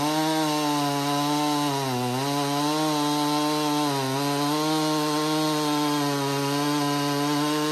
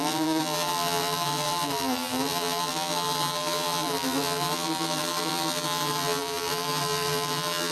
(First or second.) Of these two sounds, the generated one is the second